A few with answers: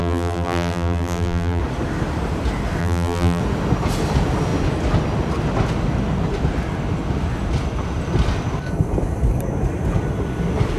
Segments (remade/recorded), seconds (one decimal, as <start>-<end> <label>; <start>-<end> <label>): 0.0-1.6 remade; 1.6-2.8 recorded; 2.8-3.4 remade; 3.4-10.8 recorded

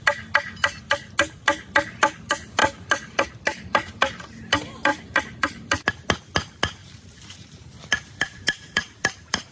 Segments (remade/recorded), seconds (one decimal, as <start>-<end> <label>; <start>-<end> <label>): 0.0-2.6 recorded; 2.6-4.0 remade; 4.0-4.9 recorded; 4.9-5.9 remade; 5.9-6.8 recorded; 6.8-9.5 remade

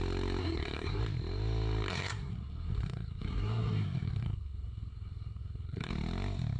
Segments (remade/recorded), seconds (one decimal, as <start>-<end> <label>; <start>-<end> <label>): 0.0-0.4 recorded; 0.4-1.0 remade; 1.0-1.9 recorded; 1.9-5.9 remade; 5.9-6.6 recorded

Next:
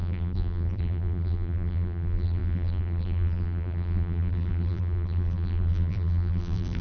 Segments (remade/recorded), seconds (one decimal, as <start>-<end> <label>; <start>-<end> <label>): 0.0-6.8 remade